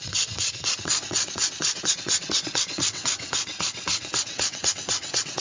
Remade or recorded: remade